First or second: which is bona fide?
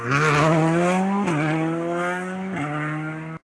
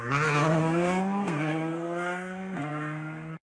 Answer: first